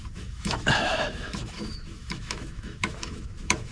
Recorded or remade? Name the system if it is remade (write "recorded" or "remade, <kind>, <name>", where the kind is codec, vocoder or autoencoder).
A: remade, autoencoder, DAC-VAE